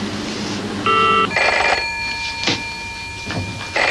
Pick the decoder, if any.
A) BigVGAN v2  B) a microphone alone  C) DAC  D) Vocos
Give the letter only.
B